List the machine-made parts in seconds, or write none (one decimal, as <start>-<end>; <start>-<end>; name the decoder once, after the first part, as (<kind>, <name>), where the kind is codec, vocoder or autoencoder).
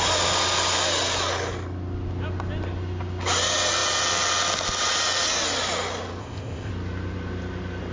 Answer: 6.2-6.7 (codec, ZipCodec)